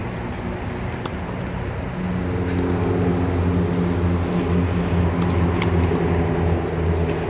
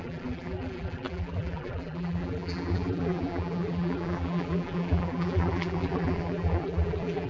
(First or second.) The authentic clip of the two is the first